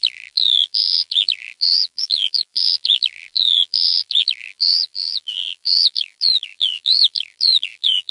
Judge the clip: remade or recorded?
remade